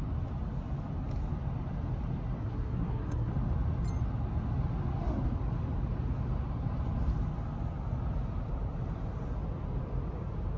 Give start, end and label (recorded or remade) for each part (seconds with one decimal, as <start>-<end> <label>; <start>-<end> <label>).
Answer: 0.0-2.4 recorded; 2.4-3.3 remade; 3.3-10.6 recorded